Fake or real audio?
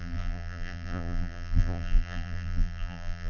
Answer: fake